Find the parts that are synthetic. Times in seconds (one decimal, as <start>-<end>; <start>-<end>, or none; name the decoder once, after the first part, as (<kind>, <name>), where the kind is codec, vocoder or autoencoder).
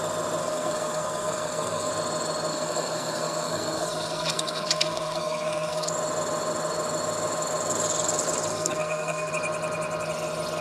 0.4-1.9 (codec, SNAC); 2.5-5.9; 8.5-9.3